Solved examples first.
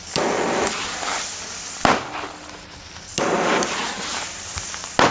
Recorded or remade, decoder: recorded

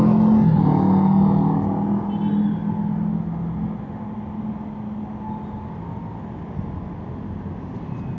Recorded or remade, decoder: recorded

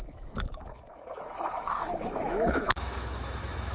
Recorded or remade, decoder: remade, autoencoder, DAC-VAE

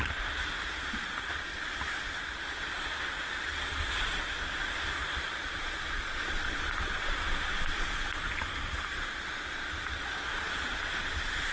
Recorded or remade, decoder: recorded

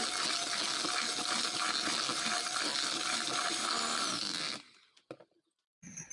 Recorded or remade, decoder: recorded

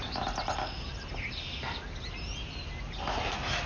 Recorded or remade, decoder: recorded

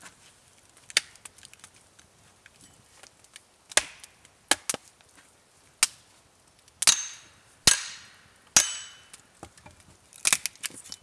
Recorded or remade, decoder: recorded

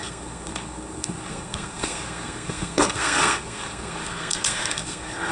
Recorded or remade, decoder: remade, codec, SNAC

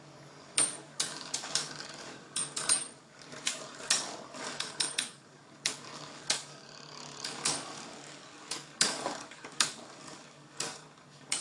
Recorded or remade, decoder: remade, codec, DAC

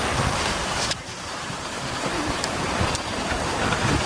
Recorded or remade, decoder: remade, vocoder, BigVGAN v2